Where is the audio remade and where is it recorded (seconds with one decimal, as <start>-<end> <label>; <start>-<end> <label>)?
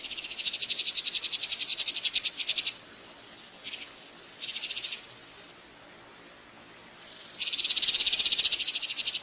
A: 0.0-9.2 recorded